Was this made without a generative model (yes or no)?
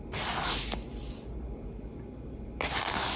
yes